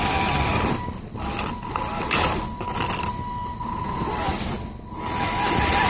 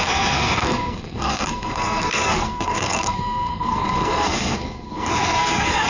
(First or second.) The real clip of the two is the first